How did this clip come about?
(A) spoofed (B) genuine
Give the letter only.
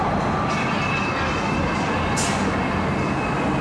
B